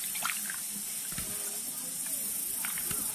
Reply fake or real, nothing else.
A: real